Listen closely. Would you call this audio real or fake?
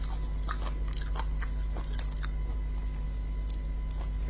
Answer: real